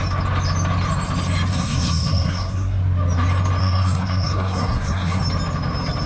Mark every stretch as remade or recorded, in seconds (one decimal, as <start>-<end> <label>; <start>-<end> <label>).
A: 0.0-1.5 recorded; 1.5-2.8 remade; 2.8-3.6 recorded; 3.6-5.2 remade; 5.2-6.1 recorded